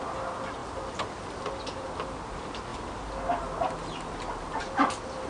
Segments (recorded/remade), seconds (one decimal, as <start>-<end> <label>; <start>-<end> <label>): 0.0-0.6 recorded; 0.6-1.6 remade; 1.6-5.3 recorded

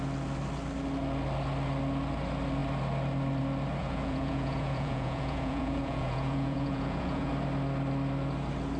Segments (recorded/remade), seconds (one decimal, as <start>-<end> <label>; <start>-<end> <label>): 0.0-3.8 recorded; 3.8-7.3 remade; 7.3-8.8 recorded

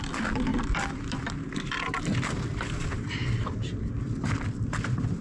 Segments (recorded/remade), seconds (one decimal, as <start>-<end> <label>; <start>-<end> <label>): 0.0-5.2 remade

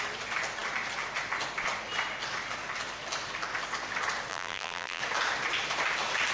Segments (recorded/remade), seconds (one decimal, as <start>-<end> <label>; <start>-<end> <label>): 0.0-4.3 recorded; 4.3-5.0 remade; 5.0-6.3 recorded

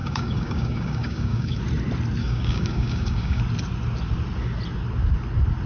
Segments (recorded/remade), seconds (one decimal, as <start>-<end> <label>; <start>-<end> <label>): 0.0-1.6 remade; 1.6-2.2 recorded; 2.2-3.4 remade; 3.4-5.7 recorded

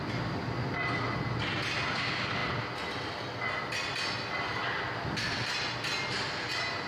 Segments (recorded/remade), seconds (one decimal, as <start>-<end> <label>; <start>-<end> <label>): 0.0-6.9 recorded

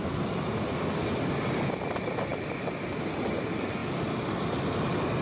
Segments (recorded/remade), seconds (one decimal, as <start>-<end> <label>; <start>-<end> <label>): 0.0-5.2 recorded